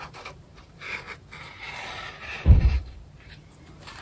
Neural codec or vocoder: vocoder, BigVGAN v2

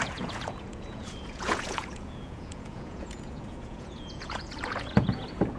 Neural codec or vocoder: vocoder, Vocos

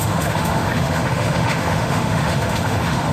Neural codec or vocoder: autoencoder, DAC-VAE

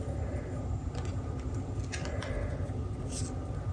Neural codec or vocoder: none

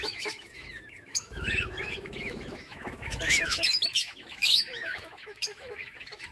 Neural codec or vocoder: autoencoder, DAC-VAE